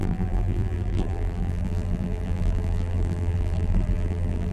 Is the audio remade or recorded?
remade